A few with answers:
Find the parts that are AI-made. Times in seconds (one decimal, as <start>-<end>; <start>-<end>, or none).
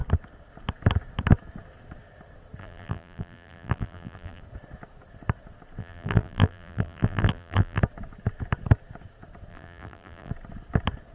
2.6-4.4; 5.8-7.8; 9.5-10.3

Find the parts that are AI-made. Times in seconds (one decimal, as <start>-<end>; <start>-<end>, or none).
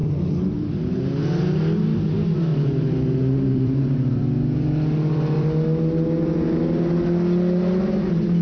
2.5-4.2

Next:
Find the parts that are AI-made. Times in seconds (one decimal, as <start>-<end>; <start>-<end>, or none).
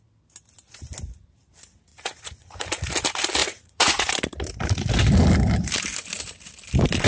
1.9-2.7; 3.4-4.1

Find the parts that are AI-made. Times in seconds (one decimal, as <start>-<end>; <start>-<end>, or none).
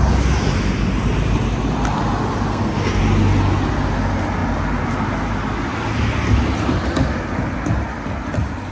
2.5-3.0